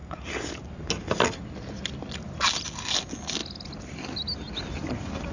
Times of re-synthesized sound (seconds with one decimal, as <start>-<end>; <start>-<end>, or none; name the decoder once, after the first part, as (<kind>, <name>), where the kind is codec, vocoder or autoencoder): none

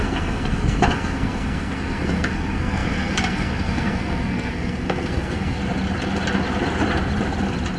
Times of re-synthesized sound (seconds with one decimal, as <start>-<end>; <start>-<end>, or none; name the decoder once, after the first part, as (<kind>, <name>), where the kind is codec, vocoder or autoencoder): 0.0-5.6 (codec, SNAC)